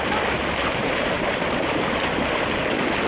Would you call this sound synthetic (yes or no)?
no